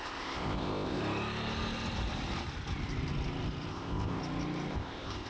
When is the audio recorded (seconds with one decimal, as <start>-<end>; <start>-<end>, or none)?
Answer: 1.0-3.7; 4.2-4.7